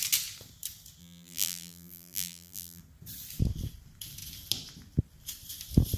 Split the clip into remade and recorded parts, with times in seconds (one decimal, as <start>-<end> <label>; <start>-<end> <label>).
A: 0.0-1.0 recorded; 1.0-2.8 remade; 2.8-6.0 recorded

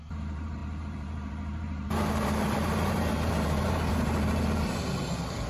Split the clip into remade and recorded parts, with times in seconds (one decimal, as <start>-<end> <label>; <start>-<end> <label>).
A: 0.0-5.5 remade

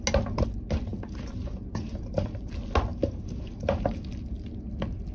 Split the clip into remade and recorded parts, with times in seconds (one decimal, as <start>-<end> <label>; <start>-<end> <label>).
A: 0.0-0.9 recorded; 0.9-2.5 remade; 2.5-2.9 recorded; 2.9-4.0 remade; 4.0-5.1 recorded

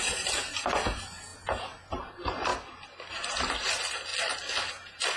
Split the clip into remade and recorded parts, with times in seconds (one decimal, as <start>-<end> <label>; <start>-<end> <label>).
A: 0.0-2.5 remade; 2.5-3.1 recorded; 3.1-4.1 remade; 4.1-4.7 recorded; 4.7-5.2 remade

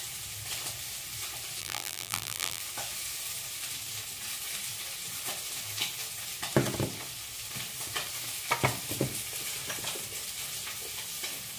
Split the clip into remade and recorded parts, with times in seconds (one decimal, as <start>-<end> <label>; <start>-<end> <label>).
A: 0.0-1.6 recorded; 1.6-2.6 remade; 2.6-11.6 recorded

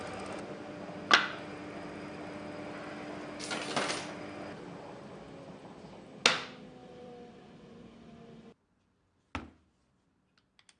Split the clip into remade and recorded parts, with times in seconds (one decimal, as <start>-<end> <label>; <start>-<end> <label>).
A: 0.0-6.8 recorded; 6.8-8.5 remade; 8.5-10.8 recorded

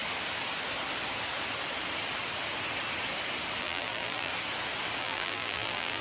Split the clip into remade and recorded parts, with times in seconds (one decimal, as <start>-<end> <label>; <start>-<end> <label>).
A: 0.0-3.6 recorded; 3.6-4.3 remade; 4.3-5.0 recorded; 5.0-6.0 remade